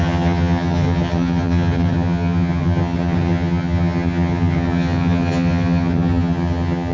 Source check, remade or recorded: remade